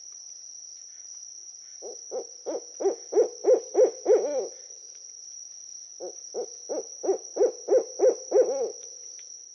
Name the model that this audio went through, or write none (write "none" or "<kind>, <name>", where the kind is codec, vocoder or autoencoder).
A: none